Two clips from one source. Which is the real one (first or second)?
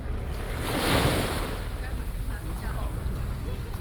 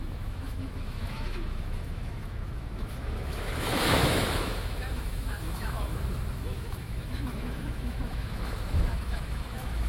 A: first